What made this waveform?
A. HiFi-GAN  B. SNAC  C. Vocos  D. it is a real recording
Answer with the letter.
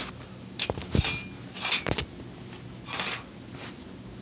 D